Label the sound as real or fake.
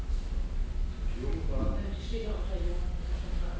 real